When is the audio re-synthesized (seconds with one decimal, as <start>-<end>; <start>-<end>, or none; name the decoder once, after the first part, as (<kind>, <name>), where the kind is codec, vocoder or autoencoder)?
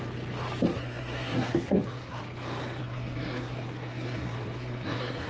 0.7-2.2 (codec, SNAC); 2.8-5.3